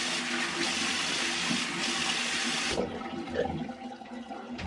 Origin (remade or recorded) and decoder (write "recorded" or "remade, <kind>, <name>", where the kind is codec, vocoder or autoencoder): recorded